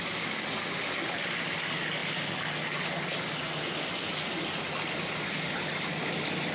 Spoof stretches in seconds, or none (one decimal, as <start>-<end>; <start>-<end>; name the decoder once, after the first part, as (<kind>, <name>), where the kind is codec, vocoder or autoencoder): none